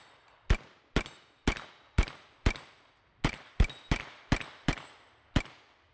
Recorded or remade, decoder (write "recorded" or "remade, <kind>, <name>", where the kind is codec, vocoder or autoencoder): recorded